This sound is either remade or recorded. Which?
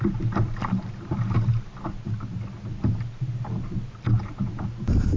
recorded